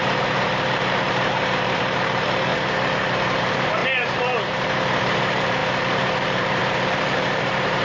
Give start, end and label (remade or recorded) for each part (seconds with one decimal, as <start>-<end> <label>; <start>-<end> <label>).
0.0-2.5 remade; 2.5-3.0 recorded; 3.0-3.8 remade; 3.8-5.0 recorded; 5.0-7.8 remade

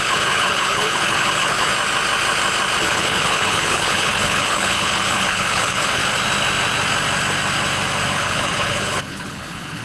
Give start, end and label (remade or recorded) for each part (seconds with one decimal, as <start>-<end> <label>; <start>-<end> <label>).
0.0-1.7 remade; 1.7-2.8 recorded; 2.8-6.0 remade; 6.0-8.1 recorded; 8.1-9.8 remade

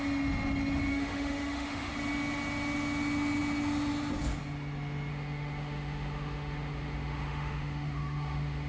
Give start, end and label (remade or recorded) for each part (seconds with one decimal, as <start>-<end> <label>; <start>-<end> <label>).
0.0-0.9 recorded; 0.9-1.9 remade; 1.9-5.1 recorded; 5.1-8.7 remade

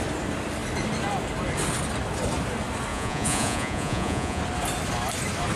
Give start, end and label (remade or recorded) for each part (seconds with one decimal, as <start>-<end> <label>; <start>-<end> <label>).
0.0-2.9 recorded; 2.9-4.4 remade; 4.4-5.6 recorded